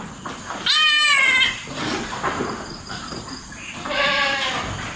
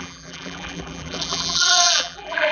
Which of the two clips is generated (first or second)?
second